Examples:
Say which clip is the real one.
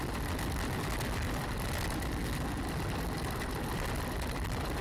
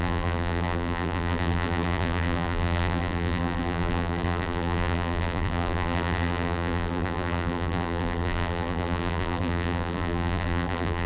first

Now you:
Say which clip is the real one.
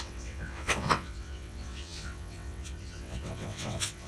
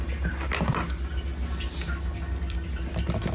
second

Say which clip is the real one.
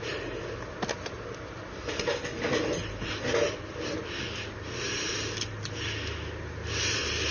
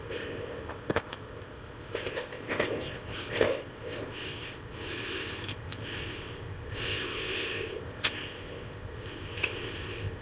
first